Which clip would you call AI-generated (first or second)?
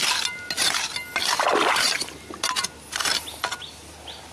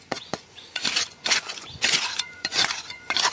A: second